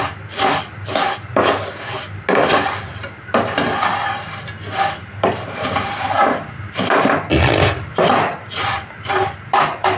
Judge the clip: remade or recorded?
recorded